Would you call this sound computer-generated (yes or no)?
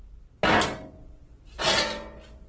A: no